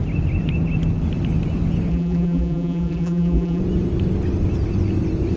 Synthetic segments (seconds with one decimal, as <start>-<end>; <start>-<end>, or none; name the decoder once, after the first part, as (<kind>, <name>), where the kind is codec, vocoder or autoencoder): 1.9-3.6 (vocoder, BigVGAN v2)